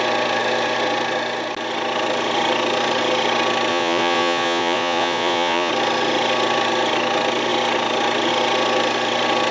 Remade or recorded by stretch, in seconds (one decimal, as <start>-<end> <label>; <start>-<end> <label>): 0.0-3.7 recorded; 3.7-5.7 remade; 5.7-9.5 recorded